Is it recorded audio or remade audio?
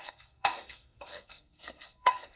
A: remade